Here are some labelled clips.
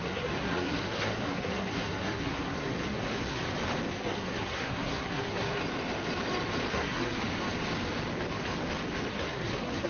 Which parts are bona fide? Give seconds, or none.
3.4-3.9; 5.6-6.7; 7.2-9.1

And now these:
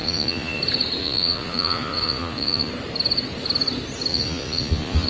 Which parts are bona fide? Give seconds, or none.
0.6-1.0; 2.7-4.1